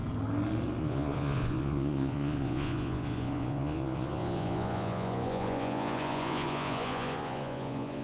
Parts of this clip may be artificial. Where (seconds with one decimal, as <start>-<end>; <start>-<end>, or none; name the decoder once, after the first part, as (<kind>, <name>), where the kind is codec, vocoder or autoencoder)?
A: 0.8-8.0 (vocoder, Vocos)